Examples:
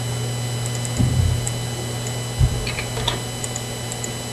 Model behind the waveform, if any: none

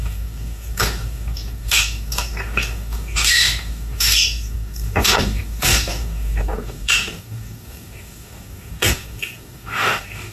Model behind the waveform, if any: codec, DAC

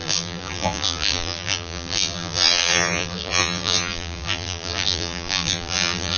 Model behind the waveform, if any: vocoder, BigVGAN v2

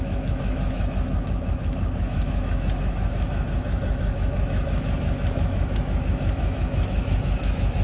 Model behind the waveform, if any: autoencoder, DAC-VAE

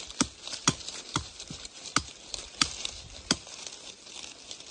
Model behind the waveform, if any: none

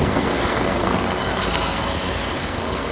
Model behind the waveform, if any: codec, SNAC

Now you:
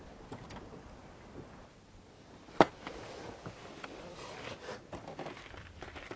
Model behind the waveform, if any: none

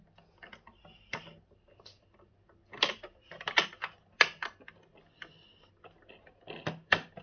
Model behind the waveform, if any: none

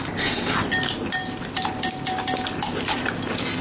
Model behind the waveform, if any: none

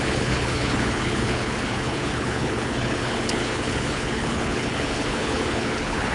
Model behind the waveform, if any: codec, HILCodec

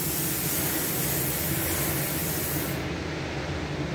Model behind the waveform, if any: none